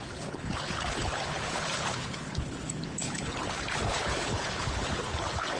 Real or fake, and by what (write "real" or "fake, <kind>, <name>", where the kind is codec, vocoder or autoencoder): fake, codec, HILCodec